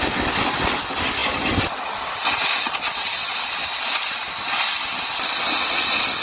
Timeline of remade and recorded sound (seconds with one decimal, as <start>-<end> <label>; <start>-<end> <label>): 0.0-6.2 recorded